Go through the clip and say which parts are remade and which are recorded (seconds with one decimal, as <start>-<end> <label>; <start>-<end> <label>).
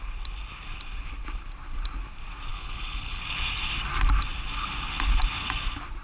0.0-2.5 recorded; 2.5-3.2 remade; 3.2-6.0 recorded